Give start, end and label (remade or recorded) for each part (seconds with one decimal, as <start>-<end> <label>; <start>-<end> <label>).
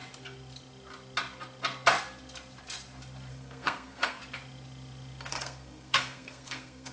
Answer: 0.0-3.3 recorded; 3.3-4.2 remade; 4.2-5.3 recorded; 5.3-6.9 remade